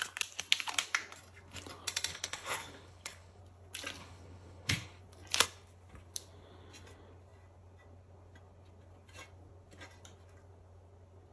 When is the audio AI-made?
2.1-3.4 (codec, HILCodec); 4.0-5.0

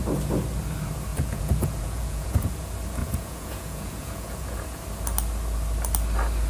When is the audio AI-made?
1.1-2.6 (vocoder, Vocos); 3.0-4.8

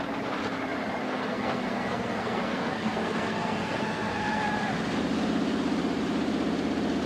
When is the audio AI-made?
1.0-4.4 (codec, SNAC)

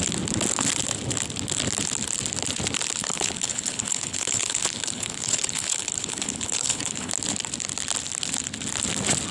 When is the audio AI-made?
3.0-7.1 (codec, HILCodec)

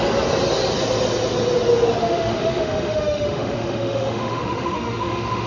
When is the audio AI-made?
2.0-5.5 (autoencoder, DAC-VAE)

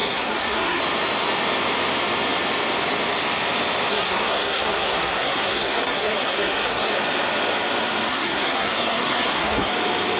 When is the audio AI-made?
0.0-0.8 (codec, SNAC); 3.9-6.9; 8.1-9.7

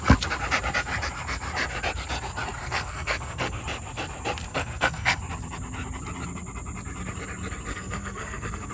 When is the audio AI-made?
2.6-3.6 (codec, SNAC); 4.5-5.2; 7.7-8.7